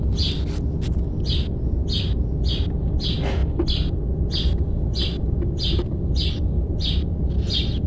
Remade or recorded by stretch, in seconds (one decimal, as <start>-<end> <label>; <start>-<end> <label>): 0.0-7.9 recorded